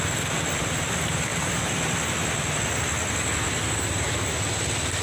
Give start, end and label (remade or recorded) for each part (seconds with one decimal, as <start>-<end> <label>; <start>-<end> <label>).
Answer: 0.0-5.0 recorded